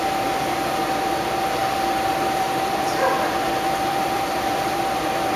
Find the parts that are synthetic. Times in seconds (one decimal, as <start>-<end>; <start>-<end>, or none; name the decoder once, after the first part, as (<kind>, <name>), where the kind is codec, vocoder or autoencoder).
1.6-4.8 (vocoder, BigVGAN v2)